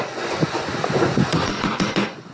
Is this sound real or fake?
fake